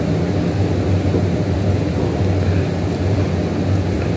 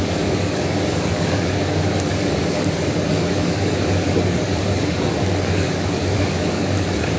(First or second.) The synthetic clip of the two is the second